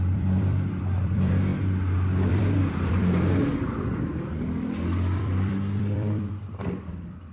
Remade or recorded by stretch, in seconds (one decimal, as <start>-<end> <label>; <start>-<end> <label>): 0.0-1.5 remade; 1.5-2.3 recorded; 2.3-7.3 remade